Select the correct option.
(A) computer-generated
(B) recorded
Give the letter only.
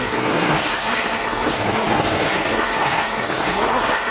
A